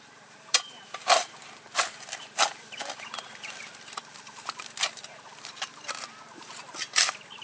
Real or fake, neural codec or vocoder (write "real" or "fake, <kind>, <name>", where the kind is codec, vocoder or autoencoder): fake, vocoder, BigVGAN v2